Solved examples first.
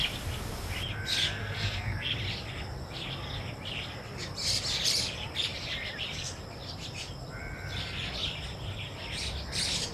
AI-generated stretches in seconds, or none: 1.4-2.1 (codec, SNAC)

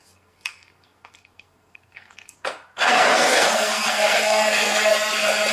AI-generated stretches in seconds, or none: 0.0-4.9 (codec, SNAC)

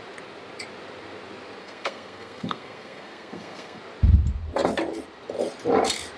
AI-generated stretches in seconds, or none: 1.6-3.8 (codec, SNAC)

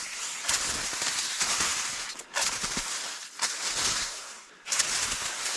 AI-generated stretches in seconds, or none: 3.9-4.5 (codec, SNAC)

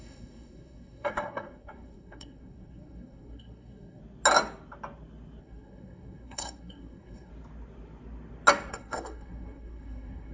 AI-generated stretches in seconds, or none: 0.0-4.0 (codec, SNAC); 5.4-7.3; 8.7-10.3

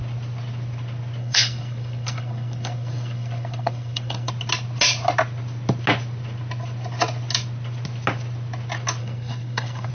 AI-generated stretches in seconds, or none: 1.2-4.3 (codec, SNAC); 9.0-9.9